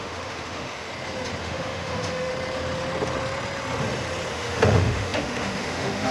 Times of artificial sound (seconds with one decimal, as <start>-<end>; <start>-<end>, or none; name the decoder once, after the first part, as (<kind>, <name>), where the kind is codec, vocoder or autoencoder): 0.0-0.9 (autoencoder, DAC-VAE); 1.4-2.3; 4.3-6.1